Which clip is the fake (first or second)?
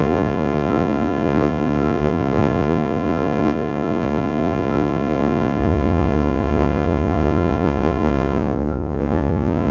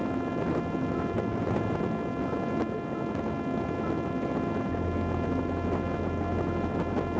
first